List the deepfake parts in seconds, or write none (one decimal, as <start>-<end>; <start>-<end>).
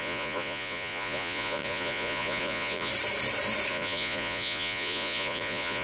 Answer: 0.0-2.9; 3.7-5.8